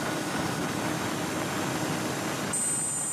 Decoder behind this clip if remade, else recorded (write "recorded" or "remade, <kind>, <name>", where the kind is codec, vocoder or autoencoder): recorded